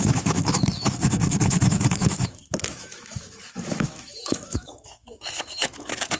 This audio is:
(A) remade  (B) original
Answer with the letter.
A